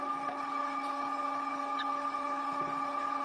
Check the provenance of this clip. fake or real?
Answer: fake